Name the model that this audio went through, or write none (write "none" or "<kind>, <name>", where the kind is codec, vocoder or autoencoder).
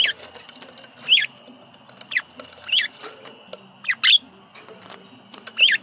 none